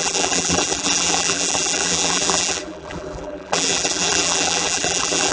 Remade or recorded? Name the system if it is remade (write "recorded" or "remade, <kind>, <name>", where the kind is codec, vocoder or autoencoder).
remade, vocoder, BigVGAN v2